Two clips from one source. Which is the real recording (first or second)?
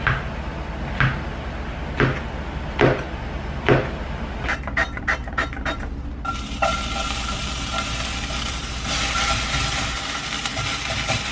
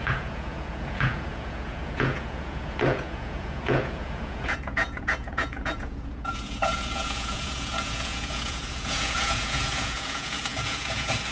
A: first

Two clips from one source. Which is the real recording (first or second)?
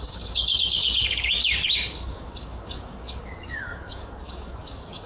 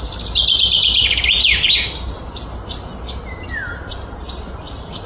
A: second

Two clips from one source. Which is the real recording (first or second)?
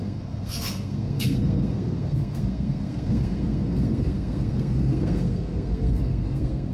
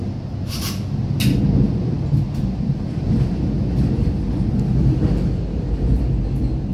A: second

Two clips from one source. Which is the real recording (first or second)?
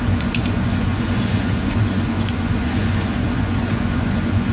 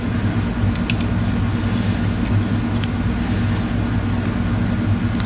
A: second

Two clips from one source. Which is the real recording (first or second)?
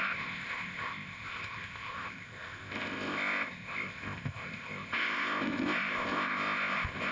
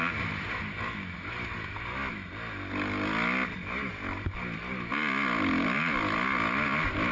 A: second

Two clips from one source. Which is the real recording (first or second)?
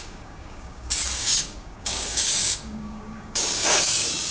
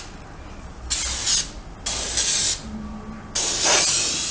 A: second